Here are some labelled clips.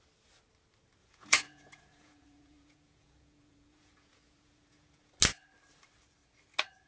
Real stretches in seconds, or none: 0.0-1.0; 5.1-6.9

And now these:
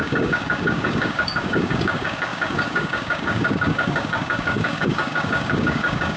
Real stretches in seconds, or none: none

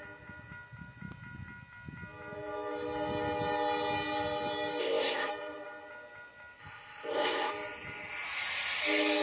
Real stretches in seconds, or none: 0.0-4.8; 5.3-6.6; 7.5-9.2

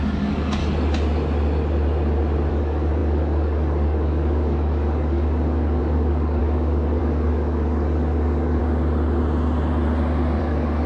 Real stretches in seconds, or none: 0.6-2.5; 8.6-10.4

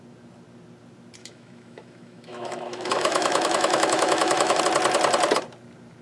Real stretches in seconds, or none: 0.0-1.2; 4.6-6.0

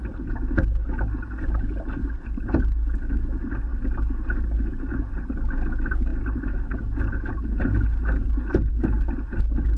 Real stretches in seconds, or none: 0.0-9.8

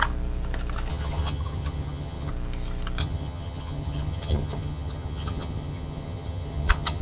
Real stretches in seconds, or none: 0.0-0.9; 2.3-3.0

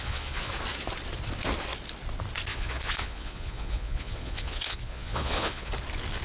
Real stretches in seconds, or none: 0.5-2.5; 5.7-6.2